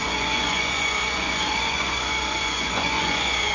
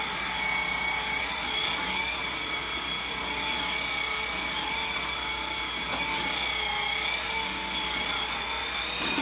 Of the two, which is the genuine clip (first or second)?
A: second